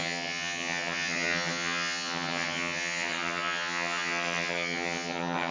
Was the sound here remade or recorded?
remade